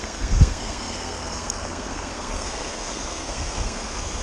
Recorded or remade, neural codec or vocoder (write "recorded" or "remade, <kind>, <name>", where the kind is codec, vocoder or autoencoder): remade, codec, SNAC